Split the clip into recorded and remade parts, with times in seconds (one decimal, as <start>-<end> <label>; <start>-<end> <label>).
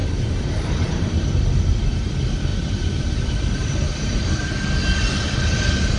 0.0-1.1 remade; 1.1-2.5 recorded; 2.5-4.3 remade; 4.3-6.0 recorded